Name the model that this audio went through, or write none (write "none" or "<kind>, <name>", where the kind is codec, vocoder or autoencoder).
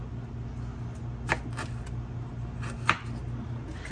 none